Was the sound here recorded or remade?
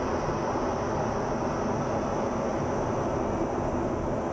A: recorded